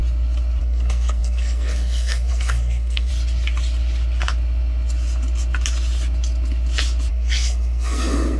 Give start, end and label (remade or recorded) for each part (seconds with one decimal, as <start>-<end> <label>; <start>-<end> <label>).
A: 0.0-0.6 recorded; 0.6-3.1 remade; 3.1-7.1 recorded; 7.1-8.4 remade